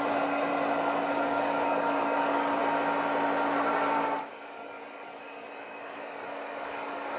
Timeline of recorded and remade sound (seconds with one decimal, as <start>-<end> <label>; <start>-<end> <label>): 0.0-0.5 remade; 0.5-1.1 recorded; 1.1-2.6 remade; 2.6-4.2 recorded; 4.2-7.2 remade